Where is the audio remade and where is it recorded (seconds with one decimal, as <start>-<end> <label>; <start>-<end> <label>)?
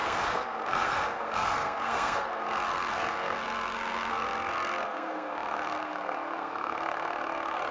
0.0-7.7 remade